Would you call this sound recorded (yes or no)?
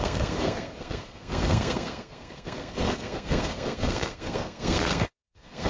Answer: no